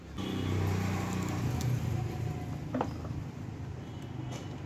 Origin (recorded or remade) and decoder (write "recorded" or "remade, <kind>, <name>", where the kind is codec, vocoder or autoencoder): recorded